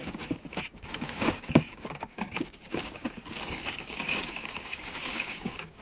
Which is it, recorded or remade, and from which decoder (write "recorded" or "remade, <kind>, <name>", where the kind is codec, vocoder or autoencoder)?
remade, codec, DAC